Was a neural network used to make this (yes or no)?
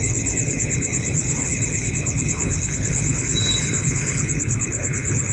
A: yes